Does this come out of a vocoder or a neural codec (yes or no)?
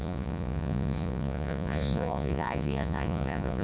yes